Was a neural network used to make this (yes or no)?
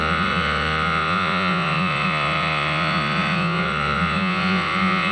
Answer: yes